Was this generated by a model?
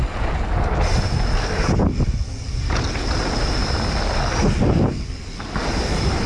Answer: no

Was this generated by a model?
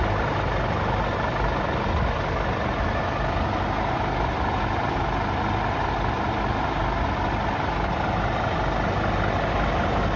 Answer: no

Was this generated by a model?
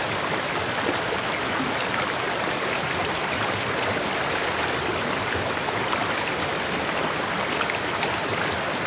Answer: no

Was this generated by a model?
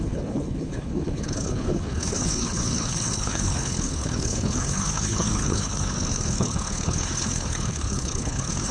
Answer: yes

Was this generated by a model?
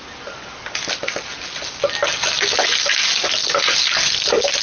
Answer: no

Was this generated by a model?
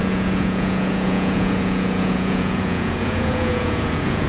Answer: yes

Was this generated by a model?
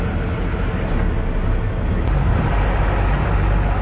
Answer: no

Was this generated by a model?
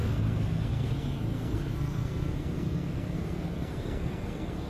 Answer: yes